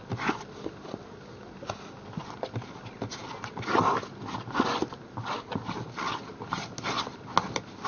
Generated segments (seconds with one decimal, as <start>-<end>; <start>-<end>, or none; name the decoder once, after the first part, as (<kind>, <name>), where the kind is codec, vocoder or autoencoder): none